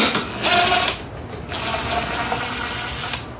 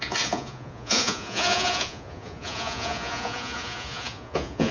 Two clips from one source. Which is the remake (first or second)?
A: second